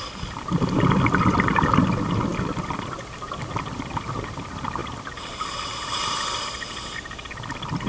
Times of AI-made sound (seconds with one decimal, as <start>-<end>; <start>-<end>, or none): none